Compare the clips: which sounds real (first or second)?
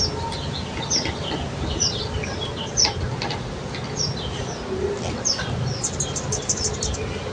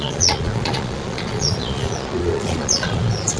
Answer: first